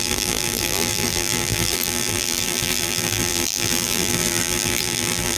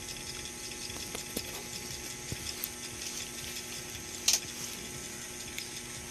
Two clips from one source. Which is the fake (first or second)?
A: first